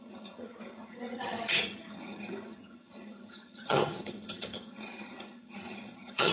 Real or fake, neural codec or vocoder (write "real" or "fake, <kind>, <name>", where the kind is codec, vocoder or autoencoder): fake, vocoder, HiFi-GAN